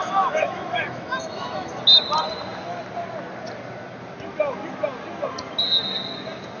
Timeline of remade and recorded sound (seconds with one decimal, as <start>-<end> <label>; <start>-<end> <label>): 0.0-1.8 remade; 1.8-6.6 recorded